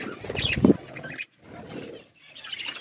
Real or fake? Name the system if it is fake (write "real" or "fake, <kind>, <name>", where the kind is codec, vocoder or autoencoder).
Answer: real